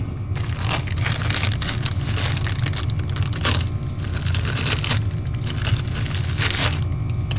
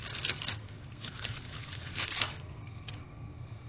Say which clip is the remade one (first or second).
second